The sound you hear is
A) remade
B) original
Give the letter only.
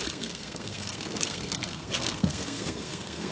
A